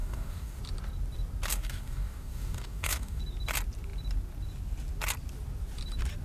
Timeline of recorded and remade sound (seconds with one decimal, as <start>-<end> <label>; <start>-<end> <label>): 0.0-0.6 remade; 0.6-1.5 recorded; 1.5-3.2 remade; 3.2-6.2 recorded